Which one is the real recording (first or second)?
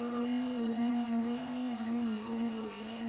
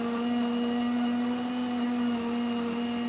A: second